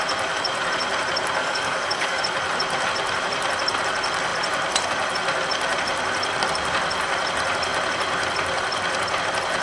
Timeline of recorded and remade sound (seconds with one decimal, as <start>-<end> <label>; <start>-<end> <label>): 0.0-1.4 recorded; 1.4-2.2 remade; 2.2-9.6 recorded